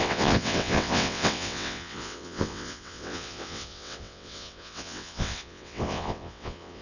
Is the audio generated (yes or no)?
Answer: yes